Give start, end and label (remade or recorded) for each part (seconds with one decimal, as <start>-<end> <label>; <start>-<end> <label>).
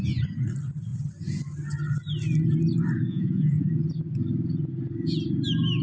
0.0-3.1 recorded; 3.1-3.7 remade; 3.7-5.8 recorded